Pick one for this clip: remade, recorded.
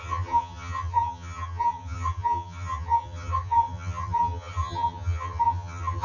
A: remade